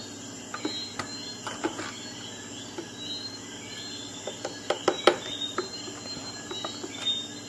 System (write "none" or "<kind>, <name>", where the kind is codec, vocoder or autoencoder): none